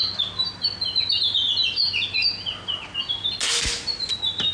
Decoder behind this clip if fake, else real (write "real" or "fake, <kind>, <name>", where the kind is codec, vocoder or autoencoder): real